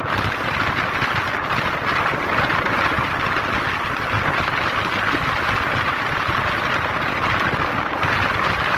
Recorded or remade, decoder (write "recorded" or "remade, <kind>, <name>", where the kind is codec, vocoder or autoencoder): recorded